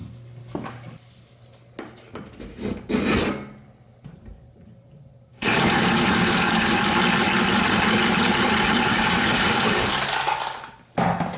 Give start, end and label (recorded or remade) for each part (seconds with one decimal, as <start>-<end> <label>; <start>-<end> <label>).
0.0-5.3 recorded; 5.3-6.7 remade; 6.7-8.9 recorded; 8.9-9.9 remade; 9.9-11.4 recorded